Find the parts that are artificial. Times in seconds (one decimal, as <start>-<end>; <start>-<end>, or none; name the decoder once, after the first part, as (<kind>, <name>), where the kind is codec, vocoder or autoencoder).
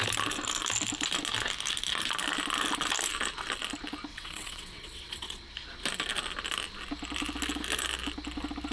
4.1-5.5 (vocoder, WaveNeXt)